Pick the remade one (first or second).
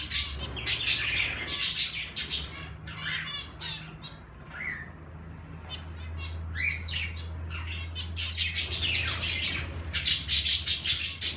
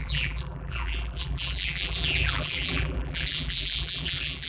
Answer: second